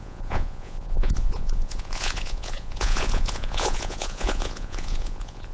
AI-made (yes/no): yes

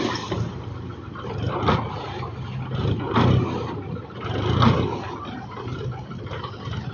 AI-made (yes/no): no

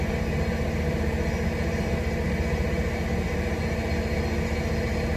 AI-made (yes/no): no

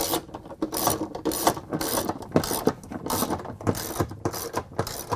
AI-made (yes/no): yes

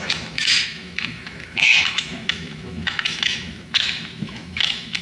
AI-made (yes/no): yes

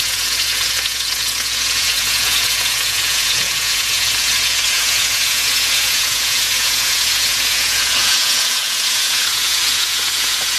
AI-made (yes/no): yes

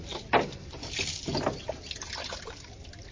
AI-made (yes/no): no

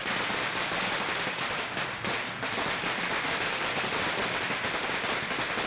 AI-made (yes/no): no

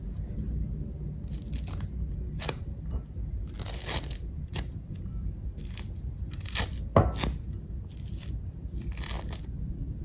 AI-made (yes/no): no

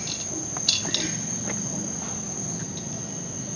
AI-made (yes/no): no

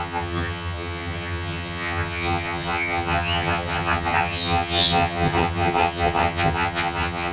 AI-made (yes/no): yes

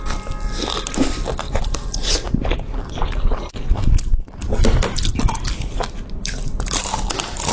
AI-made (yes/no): no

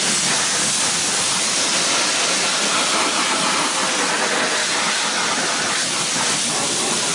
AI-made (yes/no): no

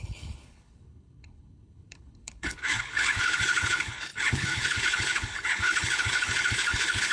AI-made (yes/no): yes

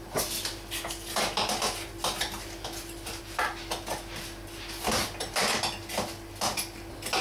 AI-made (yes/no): no